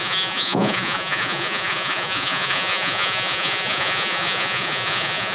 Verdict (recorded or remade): remade